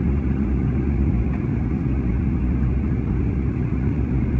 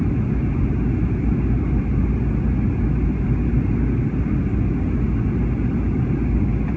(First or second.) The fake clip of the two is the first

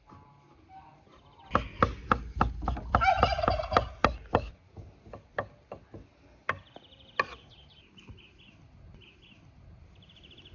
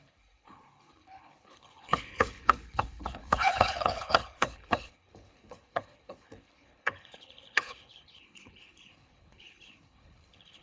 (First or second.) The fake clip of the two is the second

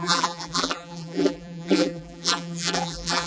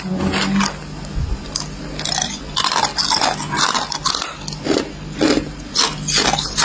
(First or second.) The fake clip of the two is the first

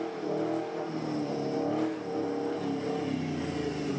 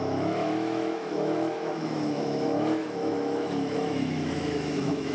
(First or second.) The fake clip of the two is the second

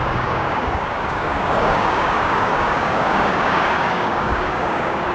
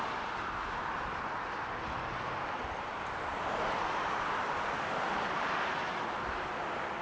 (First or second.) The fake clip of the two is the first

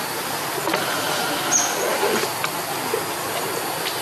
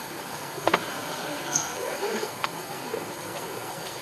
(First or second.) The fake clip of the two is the second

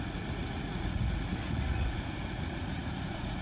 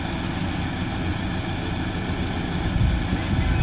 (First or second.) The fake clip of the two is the first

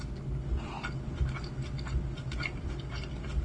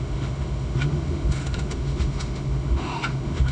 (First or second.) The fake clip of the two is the second